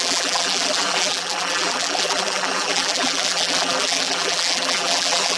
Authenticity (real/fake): fake